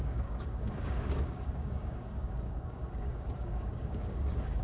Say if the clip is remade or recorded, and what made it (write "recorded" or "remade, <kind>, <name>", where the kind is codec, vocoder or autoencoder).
remade, codec, DAC